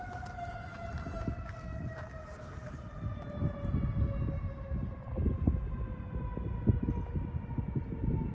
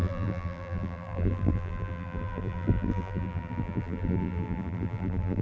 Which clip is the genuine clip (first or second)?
first